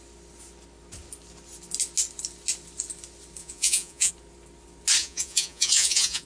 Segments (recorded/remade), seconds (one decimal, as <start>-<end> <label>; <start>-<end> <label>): 0.0-3.4 recorded; 3.4-4.1 remade; 4.1-5.0 recorded; 5.0-6.3 remade